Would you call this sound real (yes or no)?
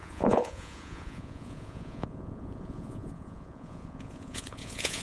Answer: no